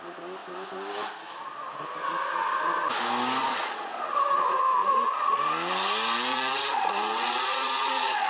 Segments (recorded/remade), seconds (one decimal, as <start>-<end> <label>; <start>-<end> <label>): 0.0-3.4 recorded; 3.4-4.0 remade; 4.0-4.8 recorded; 4.8-5.4 remade; 5.4-6.3 recorded; 6.3-8.3 remade